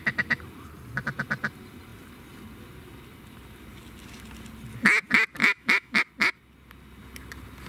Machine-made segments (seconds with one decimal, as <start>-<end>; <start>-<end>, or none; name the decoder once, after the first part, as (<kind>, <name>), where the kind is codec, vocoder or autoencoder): 5.4-6.0 (autoencoder, DAC-VAE)